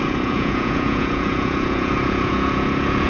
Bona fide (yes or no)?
no